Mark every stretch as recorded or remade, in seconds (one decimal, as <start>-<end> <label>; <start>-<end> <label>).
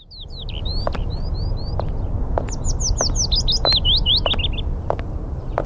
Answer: 0.0-5.7 recorded